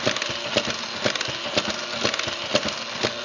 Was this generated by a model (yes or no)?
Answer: no